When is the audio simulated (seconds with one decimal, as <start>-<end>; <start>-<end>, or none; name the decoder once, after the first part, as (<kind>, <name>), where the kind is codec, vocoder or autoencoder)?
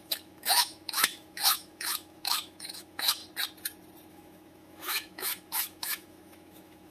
0.0-3.2 (autoencoder, DAC-VAE); 4.1-6.9